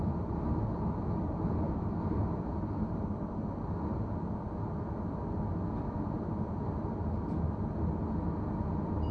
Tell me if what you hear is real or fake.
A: real